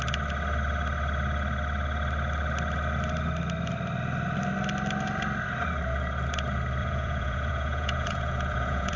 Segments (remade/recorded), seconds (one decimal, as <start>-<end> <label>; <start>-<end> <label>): 0.0-6.8 recorded; 6.8-9.0 remade